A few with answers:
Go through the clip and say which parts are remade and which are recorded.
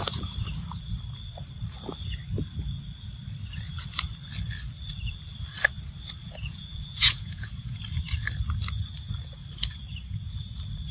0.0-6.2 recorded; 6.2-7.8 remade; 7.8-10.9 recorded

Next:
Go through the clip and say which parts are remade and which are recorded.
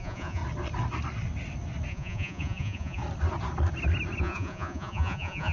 0.0-0.4 remade; 0.4-1.9 recorded; 1.9-3.0 remade; 3.0-4.2 recorded; 4.2-5.5 remade